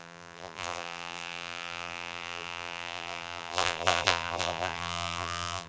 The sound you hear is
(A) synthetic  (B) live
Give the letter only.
A